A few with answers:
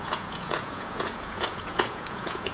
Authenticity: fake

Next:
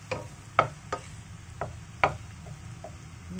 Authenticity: real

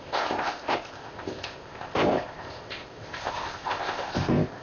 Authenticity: fake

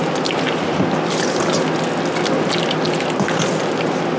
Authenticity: real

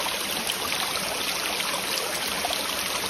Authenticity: real